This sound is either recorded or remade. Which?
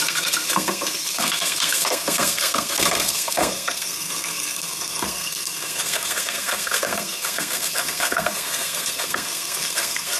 remade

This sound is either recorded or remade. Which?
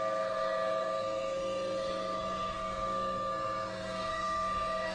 remade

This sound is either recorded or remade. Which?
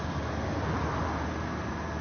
recorded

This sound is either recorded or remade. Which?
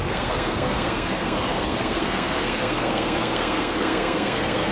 remade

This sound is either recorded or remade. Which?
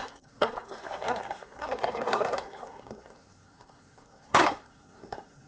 remade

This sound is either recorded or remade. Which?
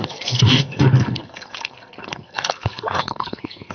remade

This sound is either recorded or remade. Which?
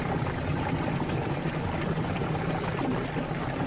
recorded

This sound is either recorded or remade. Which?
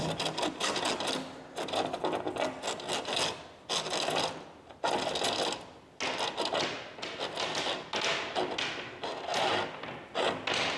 recorded